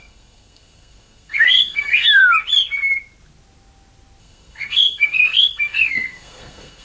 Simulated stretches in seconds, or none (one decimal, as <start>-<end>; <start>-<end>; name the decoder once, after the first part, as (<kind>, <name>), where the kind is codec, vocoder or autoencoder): 0.0-2.2 (codec, SNAC); 4.2-6.8